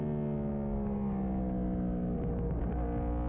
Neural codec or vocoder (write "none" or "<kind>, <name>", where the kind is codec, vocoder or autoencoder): none